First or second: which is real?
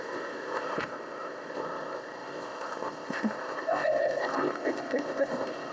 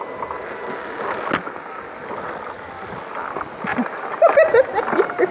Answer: second